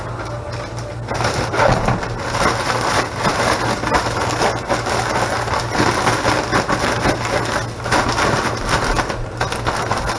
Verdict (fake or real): real